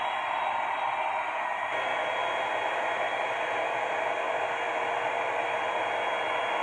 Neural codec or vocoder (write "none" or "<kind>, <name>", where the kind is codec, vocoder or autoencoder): none